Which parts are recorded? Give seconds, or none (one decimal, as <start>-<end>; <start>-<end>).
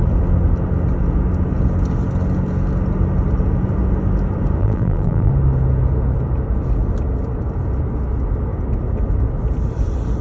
0.0-4.6; 5.3-10.2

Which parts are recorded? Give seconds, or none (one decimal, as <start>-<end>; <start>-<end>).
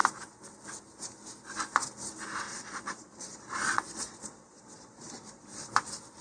0.0-2.5; 5.7-6.2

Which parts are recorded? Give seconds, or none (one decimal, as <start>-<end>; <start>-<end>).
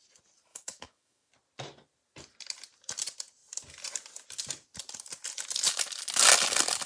0.0-0.5; 1.3-6.9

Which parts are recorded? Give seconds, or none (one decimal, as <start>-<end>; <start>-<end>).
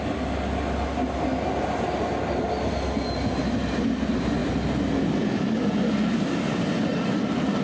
0.0-7.6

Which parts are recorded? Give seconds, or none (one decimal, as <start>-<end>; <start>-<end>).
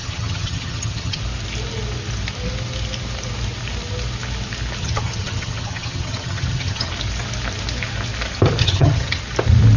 1.2-4.8; 6.9-8.6; 9.2-9.8